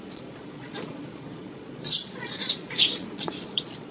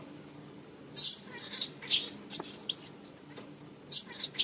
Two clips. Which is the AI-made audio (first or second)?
first